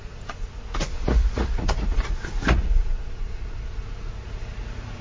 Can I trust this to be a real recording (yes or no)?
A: no